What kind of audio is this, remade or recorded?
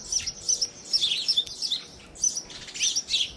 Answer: recorded